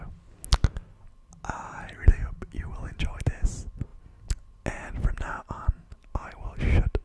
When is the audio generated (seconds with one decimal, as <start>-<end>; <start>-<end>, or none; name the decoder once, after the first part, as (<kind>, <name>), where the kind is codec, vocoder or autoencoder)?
none